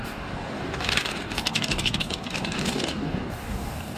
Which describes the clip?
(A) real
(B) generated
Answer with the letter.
B